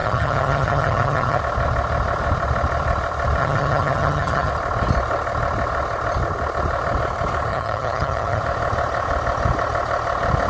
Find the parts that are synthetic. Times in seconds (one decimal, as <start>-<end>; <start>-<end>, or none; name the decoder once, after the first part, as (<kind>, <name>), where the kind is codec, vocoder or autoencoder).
0.0-1.4 (vocoder, HiFi-GAN); 3.4-4.5; 7.5-8.4